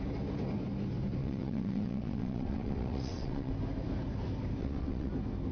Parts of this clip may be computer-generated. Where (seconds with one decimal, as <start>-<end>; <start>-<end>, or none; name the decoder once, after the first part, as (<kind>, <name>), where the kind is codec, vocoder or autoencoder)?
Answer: 1.2-3.5 (vocoder, WaveNeXt); 4.6-5.1